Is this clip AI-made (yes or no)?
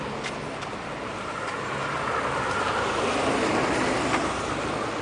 no